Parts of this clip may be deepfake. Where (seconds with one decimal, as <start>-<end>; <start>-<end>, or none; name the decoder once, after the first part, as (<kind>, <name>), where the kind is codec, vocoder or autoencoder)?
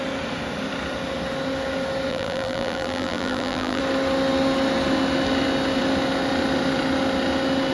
2.1-3.8 (vocoder, BigVGAN v2)